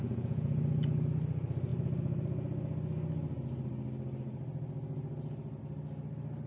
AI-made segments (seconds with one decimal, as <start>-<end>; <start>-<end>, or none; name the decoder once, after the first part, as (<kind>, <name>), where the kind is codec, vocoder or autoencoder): 0.0-0.5 (vocoder, Vocos)

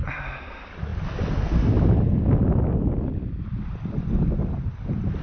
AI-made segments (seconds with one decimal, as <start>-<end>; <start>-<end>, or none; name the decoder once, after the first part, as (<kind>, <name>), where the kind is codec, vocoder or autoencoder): none

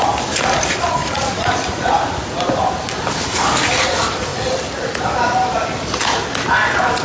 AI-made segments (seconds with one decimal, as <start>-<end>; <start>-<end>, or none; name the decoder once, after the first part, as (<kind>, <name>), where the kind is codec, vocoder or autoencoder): 1.0-2.1 (vocoder, Vocos)